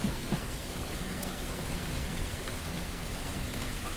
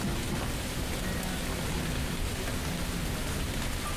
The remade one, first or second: first